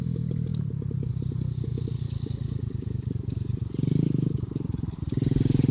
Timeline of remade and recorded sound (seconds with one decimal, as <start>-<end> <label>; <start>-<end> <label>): 0.0-1.7 remade; 1.7-2.5 recorded; 2.5-5.7 remade

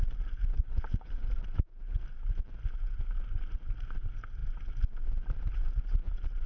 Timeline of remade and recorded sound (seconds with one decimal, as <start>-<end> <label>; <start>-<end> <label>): 0.0-0.5 recorded; 0.5-1.3 remade; 1.3-6.5 recorded